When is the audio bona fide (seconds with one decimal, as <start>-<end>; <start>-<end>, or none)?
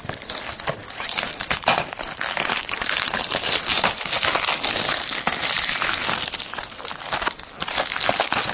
0.0-0.8; 4.1-8.5